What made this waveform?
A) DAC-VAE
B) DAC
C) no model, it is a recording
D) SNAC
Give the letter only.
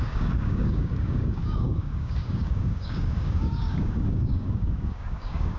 B